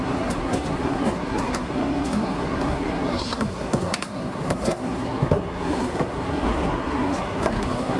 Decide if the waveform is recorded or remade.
remade